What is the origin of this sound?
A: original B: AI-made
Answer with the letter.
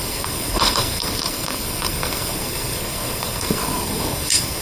B